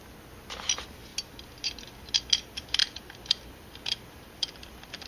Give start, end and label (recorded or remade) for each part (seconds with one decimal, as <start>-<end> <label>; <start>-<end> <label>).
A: 0.0-2.8 recorded; 2.8-5.1 remade